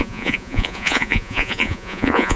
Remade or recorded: remade